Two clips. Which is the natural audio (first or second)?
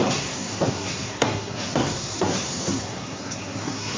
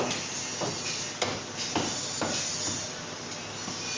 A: second